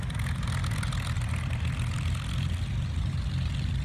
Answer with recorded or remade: remade